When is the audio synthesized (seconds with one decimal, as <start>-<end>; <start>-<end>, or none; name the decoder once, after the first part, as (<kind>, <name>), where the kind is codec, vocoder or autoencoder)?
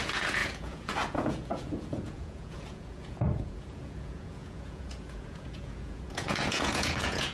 0.0-7.3 (vocoder, Vocos)